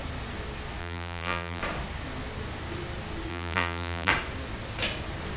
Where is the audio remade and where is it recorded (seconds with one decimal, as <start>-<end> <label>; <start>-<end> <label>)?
0.0-0.8 recorded; 0.8-1.6 remade; 1.6-3.3 recorded; 3.3-4.1 remade; 4.1-5.4 recorded